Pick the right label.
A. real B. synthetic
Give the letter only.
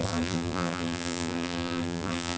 B